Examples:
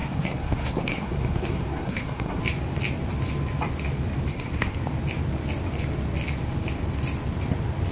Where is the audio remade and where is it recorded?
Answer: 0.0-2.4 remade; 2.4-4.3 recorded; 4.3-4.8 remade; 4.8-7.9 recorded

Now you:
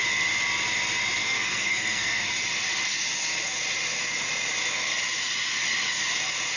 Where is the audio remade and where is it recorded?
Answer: 0.0-1.2 recorded; 1.2-2.3 remade; 2.3-6.6 recorded

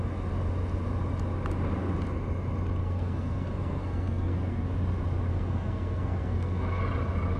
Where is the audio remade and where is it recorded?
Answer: 0.0-2.8 recorded; 2.8-4.7 remade; 4.7-5.3 recorded; 5.3-6.8 remade; 6.8-7.4 recorded